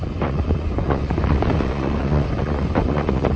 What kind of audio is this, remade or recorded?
remade